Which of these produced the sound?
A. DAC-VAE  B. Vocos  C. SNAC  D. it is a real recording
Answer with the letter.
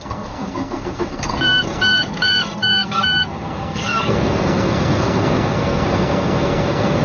C